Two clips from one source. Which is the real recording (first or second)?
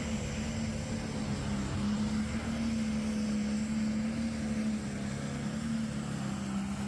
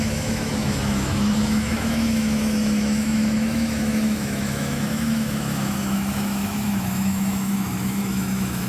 first